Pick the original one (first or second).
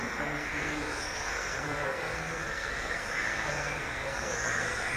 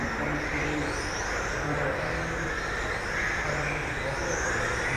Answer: second